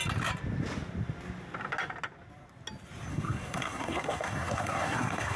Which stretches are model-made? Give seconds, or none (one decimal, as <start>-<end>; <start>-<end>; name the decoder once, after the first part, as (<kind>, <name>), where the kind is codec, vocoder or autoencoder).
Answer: 3.1-5.4 (codec, SNAC)